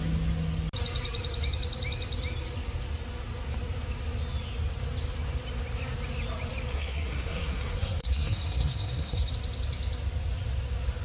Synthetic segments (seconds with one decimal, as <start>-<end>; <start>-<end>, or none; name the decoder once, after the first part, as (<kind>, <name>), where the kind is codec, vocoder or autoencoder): 6.7-9.3 (codec, SNAC)